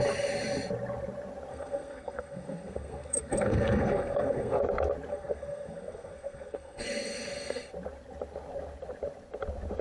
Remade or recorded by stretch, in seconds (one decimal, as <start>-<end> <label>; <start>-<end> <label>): 0.0-1.5 recorded; 1.5-4.6 remade; 4.6-5.1 recorded; 5.1-7.7 remade; 7.7-9.8 recorded